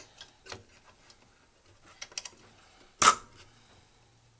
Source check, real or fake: real